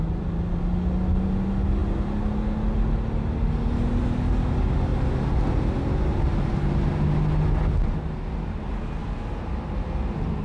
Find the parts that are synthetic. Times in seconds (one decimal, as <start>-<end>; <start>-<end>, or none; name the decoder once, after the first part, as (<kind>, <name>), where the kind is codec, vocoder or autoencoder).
4.9-6.9 (vocoder, BigVGAN v2)